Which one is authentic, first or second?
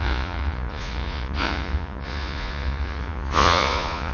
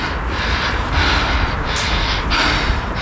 second